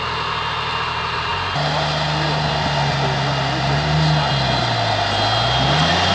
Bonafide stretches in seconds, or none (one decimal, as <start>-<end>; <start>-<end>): 0.0-6.1